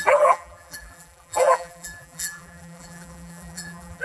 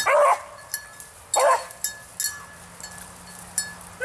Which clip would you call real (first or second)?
second